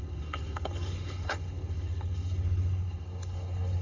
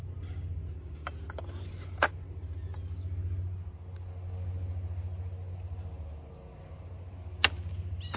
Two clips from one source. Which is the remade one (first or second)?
first